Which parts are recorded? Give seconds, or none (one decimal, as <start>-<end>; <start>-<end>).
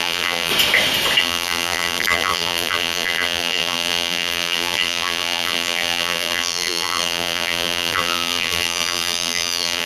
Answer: 0.5-1.2